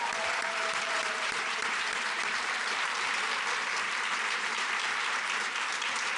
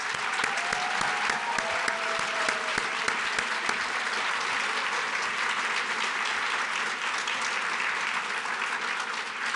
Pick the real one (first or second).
second